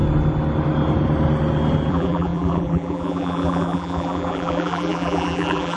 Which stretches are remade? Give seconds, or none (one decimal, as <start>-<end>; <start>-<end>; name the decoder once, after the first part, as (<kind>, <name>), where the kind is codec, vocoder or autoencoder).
1.9-5.8 (vocoder, BigVGAN v2)